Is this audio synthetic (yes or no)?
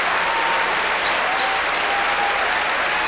no